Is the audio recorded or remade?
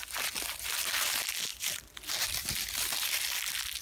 recorded